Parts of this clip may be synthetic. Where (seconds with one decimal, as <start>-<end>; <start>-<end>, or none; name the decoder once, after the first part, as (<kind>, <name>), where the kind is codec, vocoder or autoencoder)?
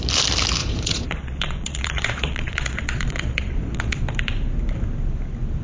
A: 0.6-4.0 (vocoder, Vocos)